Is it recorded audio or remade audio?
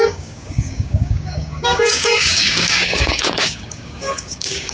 remade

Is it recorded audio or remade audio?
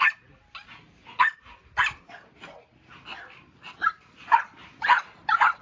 recorded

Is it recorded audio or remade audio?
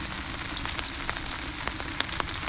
recorded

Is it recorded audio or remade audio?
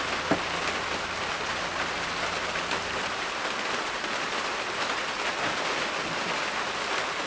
recorded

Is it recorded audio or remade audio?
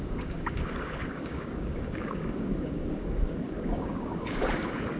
remade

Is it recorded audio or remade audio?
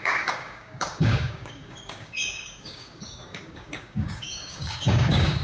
remade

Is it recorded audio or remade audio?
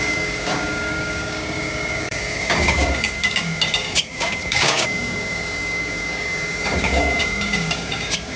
remade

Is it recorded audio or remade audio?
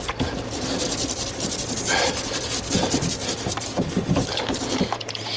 recorded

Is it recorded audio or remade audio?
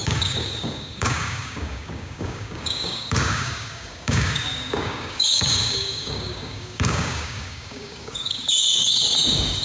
remade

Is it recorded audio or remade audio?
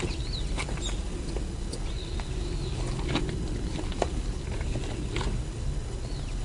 recorded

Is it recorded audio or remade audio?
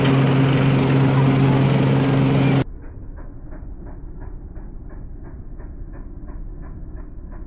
recorded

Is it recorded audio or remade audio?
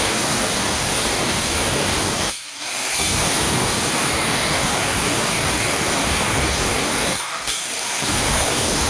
remade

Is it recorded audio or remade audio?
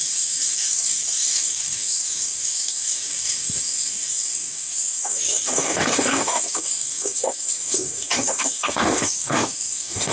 remade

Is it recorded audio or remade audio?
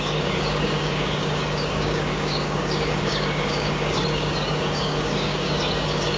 remade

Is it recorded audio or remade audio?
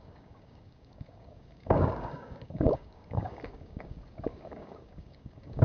remade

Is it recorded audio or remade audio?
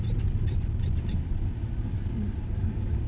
recorded